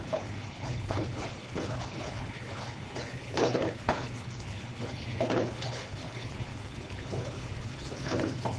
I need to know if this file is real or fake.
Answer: fake